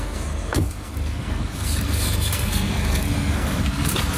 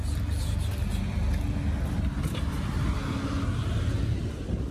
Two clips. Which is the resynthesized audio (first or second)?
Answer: first